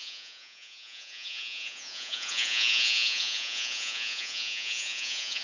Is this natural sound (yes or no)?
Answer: no